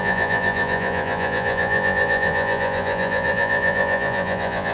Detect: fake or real fake